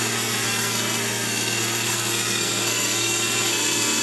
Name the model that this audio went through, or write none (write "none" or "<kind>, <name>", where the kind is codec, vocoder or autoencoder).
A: codec, SNAC